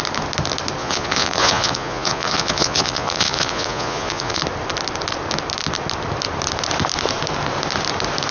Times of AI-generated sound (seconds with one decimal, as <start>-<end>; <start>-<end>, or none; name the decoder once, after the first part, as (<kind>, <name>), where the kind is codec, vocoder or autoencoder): 0.8-4.4 (vocoder, Vocos)